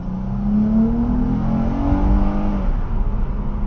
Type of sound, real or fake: real